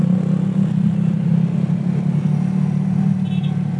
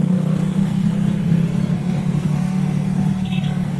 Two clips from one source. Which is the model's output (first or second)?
second